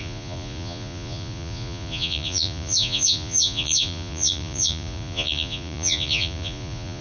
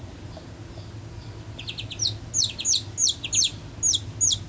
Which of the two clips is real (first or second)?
second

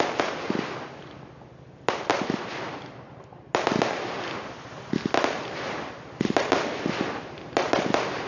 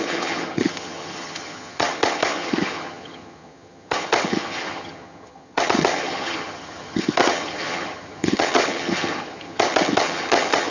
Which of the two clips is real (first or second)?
first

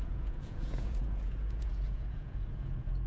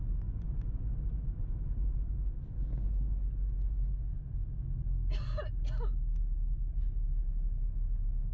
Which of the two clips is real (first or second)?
second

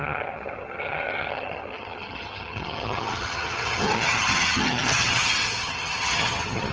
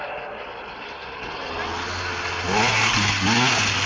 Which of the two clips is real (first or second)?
second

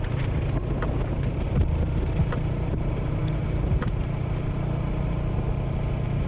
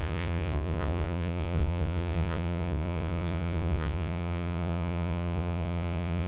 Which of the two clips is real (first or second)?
first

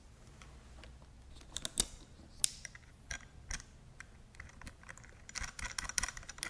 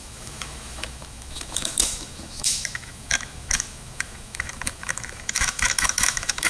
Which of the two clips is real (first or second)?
first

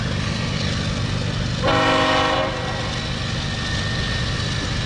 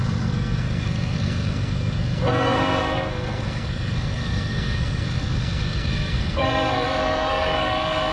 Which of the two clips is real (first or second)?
first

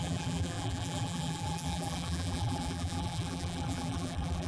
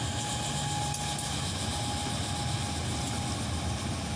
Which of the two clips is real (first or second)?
second